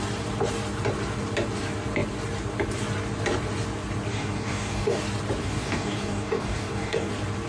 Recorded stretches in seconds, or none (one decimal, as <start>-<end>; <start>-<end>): 0.0-4.1; 5.0-5.4; 7.1-7.5